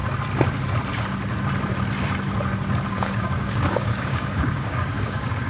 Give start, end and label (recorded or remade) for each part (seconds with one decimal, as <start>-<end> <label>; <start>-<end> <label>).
0.0-2.9 recorded; 2.9-5.5 remade